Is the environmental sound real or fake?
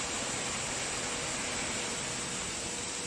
real